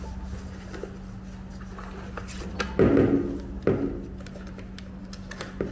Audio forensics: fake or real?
real